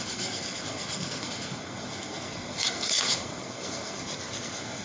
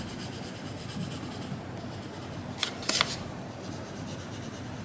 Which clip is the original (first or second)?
second